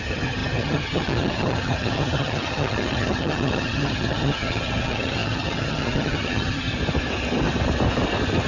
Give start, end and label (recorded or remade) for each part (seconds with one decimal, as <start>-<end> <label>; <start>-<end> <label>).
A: 0.0-6.7 remade; 6.7-8.5 recorded